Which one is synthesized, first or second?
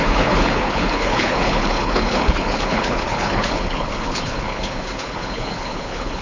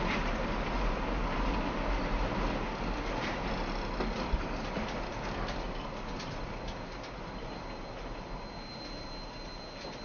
first